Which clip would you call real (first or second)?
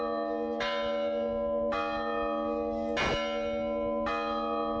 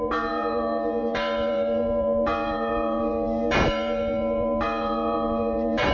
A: first